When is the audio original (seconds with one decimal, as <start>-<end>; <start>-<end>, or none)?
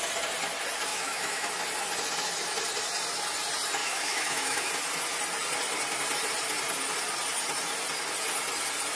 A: 0.0-0.9; 1.5-3.8; 4.7-9.0